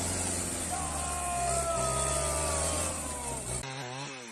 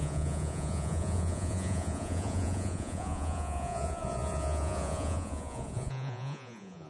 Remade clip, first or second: second